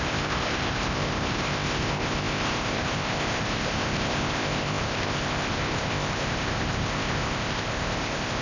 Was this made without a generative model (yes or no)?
no